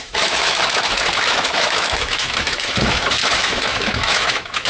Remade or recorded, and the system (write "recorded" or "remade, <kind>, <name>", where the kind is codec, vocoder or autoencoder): remade, autoencoder, DAC-VAE